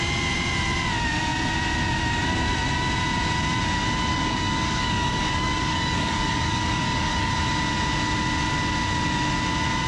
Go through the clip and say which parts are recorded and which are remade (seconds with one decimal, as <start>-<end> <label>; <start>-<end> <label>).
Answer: 0.0-4.1 recorded; 4.1-7.3 remade; 7.3-9.9 recorded